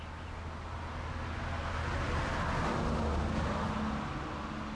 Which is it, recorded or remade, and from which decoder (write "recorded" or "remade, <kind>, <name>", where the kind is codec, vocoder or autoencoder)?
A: recorded